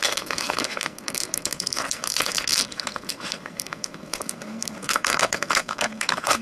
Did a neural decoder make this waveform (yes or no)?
yes